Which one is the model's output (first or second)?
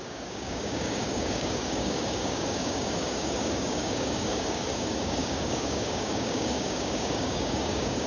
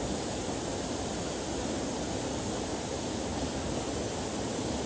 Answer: first